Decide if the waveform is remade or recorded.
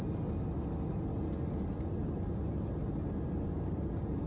recorded